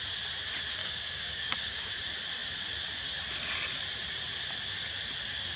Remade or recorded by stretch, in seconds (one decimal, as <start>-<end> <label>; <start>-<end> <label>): 0.0-0.8 recorded; 0.8-1.9 remade; 1.9-5.6 recorded